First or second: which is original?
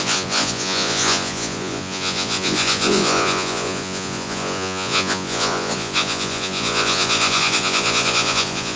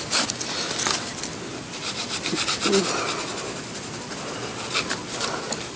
second